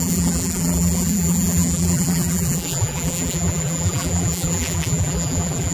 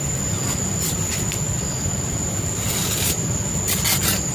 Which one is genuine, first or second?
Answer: second